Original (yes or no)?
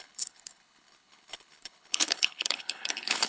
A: no